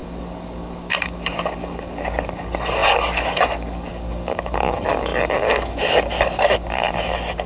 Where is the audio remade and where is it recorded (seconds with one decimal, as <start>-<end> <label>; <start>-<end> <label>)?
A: 0.0-7.5 remade